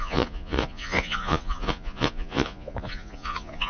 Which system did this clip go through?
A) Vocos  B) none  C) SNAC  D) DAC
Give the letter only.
A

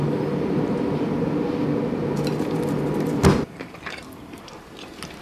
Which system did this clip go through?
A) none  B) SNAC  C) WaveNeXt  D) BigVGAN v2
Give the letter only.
A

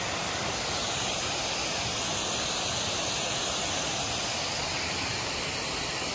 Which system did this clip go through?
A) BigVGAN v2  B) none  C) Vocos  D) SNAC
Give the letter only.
A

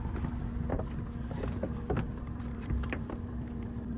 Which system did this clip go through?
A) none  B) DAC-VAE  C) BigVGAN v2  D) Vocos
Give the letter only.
C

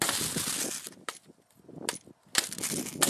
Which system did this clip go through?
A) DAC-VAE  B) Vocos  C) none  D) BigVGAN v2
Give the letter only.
C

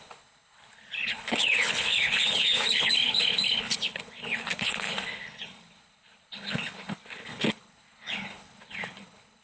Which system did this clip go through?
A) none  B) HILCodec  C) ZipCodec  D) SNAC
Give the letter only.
B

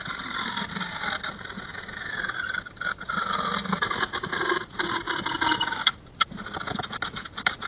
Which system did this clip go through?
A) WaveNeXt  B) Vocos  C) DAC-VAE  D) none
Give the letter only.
D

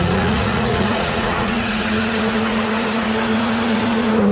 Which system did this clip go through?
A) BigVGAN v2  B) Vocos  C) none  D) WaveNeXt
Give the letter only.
B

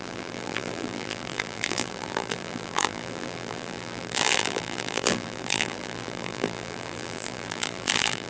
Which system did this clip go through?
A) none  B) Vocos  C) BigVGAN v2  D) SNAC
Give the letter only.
C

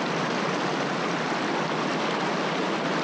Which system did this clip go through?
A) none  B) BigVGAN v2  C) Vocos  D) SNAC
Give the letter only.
A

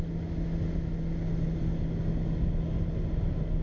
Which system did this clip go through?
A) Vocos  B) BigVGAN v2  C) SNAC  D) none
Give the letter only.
D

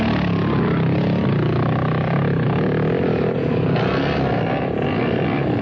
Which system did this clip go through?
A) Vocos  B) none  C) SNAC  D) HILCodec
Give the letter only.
B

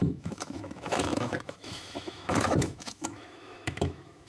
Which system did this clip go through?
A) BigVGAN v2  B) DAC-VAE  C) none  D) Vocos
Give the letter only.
B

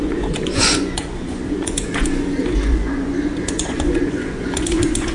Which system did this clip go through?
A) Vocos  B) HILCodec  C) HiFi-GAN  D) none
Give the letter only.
A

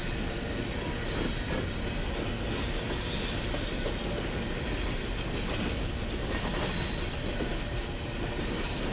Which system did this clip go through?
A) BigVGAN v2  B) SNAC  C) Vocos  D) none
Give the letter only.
D